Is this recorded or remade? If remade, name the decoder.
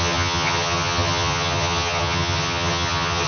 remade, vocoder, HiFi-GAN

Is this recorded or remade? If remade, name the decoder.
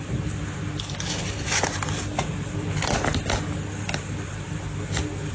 recorded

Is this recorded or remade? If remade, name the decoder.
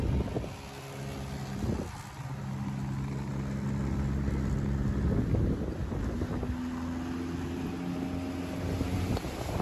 recorded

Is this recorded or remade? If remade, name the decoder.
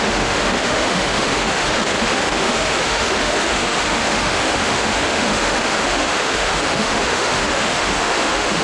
remade, autoencoder, DAC-VAE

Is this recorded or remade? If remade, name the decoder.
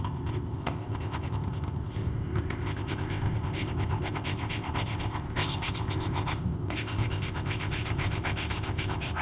remade, codec, ZipCodec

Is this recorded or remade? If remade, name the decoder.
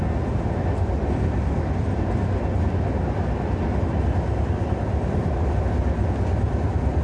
recorded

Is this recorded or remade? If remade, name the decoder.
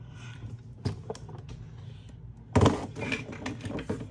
recorded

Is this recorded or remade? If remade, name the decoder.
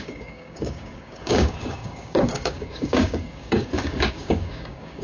remade, codec, DAC